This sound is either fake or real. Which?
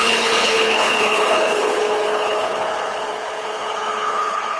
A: fake